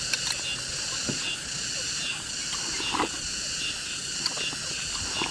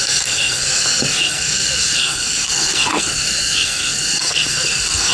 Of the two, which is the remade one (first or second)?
second